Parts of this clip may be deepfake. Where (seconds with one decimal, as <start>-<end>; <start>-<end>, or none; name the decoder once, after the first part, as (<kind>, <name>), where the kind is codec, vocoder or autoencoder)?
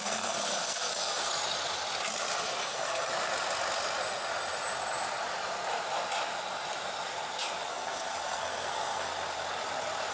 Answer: 0.0-1.3 (codec, SNAC); 2.6-3.1; 7.7-9.1